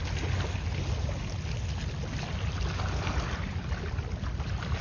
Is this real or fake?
real